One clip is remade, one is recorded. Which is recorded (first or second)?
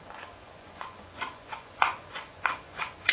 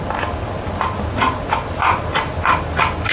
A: second